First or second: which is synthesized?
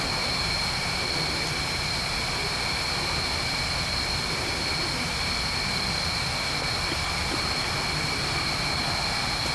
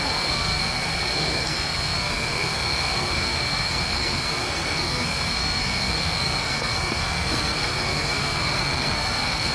second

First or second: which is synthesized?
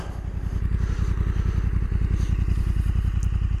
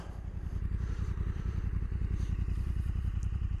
second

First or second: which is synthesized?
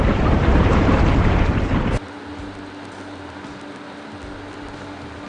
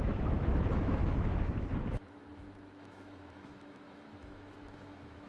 second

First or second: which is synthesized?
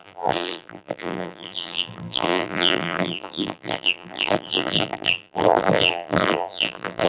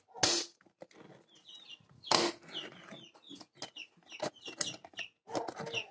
first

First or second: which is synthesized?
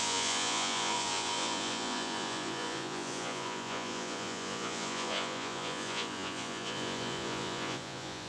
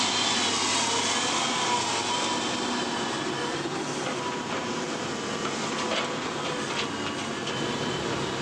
first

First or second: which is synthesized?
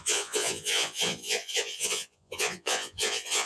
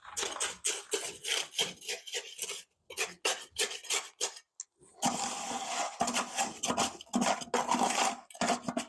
first